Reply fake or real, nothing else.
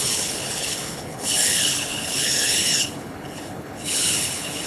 fake